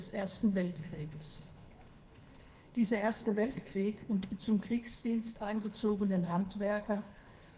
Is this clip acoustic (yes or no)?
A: no